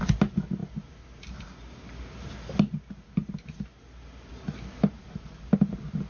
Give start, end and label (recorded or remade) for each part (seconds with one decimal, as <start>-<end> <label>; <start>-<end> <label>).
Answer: 0.0-6.1 recorded